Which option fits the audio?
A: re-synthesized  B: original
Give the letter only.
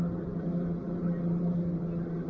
B